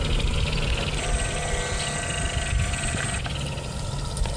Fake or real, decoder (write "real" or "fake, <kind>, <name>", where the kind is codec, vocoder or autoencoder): real